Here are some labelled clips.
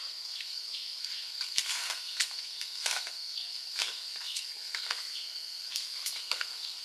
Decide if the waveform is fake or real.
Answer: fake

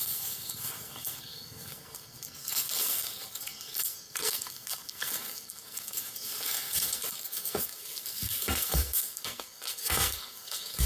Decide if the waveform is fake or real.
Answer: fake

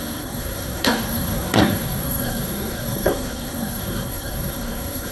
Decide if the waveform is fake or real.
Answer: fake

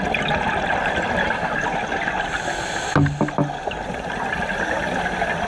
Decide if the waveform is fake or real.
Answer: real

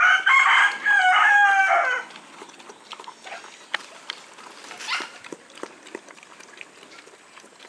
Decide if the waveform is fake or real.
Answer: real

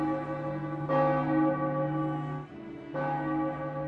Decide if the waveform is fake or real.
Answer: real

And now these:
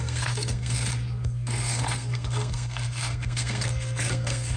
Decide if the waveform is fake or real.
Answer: fake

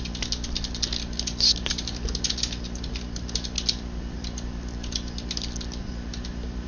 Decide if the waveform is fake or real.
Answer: real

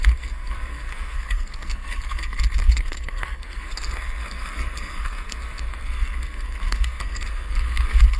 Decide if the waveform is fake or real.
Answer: fake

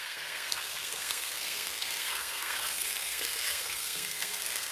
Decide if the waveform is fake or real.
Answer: fake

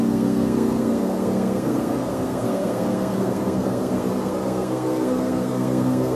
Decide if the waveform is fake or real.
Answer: fake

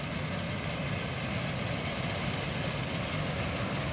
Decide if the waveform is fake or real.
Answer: real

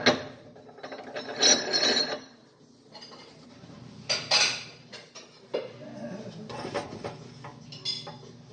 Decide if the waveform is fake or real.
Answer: real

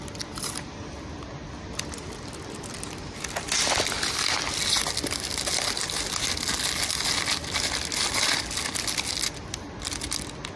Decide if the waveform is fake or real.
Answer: real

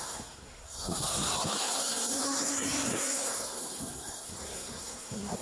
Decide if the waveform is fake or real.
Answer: fake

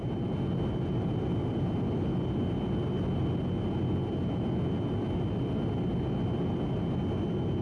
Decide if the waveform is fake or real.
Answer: real